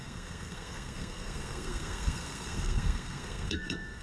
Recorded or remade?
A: remade